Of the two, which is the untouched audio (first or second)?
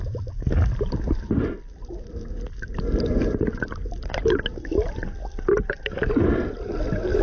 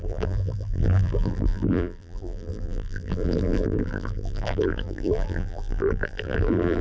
first